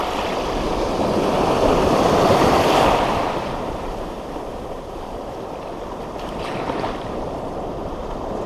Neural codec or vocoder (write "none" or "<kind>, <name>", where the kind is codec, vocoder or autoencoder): vocoder, BigVGAN v2